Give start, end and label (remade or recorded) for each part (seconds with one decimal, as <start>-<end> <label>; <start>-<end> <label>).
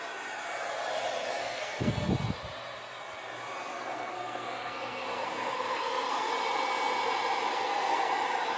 0.0-1.4 recorded; 1.4-2.1 remade; 2.1-3.7 recorded; 3.7-6.3 remade; 6.3-7.5 recorded; 7.5-8.1 remade; 8.1-8.6 recorded